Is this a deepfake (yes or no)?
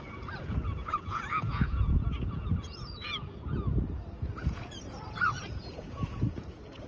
yes